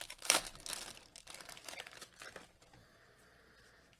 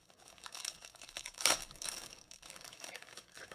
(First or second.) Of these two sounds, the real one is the first